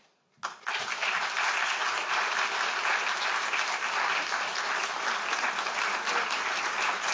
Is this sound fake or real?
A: real